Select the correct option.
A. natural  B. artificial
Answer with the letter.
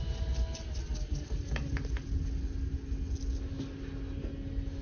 A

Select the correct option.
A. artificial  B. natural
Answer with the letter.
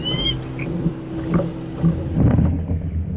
B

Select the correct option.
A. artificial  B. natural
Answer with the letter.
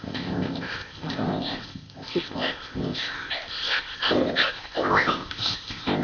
A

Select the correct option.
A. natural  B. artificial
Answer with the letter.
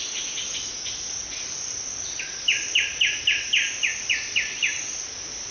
A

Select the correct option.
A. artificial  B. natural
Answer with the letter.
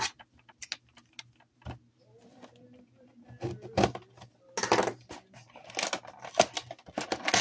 B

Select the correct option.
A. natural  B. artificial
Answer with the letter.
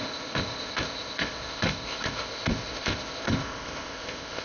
B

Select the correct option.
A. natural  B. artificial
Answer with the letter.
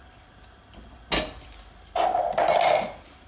A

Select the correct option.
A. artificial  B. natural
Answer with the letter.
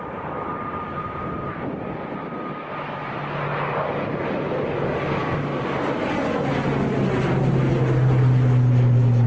B